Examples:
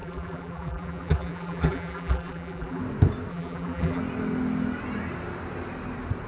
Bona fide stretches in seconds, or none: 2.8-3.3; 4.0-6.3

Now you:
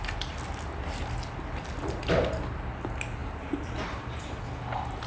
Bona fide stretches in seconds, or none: 0.0-5.1